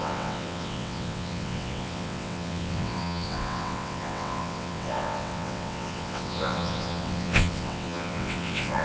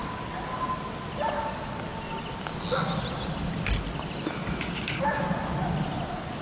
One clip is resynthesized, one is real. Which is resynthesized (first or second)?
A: first